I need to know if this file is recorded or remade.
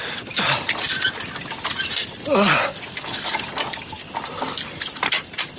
recorded